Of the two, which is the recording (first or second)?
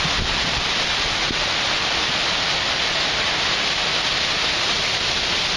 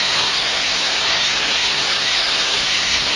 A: first